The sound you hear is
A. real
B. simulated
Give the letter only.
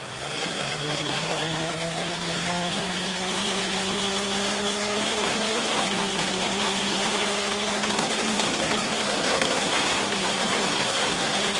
B